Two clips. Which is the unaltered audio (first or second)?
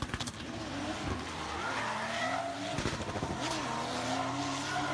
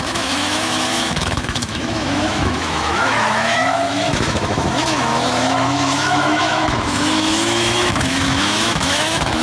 first